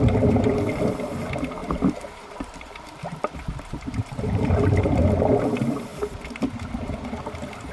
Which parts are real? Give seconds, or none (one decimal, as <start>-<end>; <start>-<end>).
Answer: 0.0-1.6; 5.0-7.7